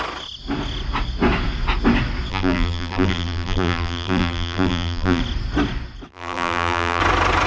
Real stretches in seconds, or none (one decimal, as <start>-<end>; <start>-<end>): 0.0-2.3; 5.2-6.1; 7.0-7.5